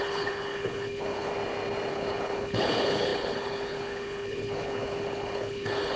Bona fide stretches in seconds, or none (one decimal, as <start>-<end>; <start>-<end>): 1.3-1.9